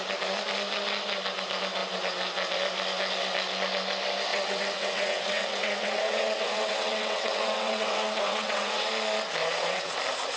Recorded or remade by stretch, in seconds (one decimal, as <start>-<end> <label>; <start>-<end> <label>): 0.0-4.3 recorded; 4.3-8.9 remade; 8.9-9.4 recorded; 9.4-9.9 remade; 9.9-10.4 recorded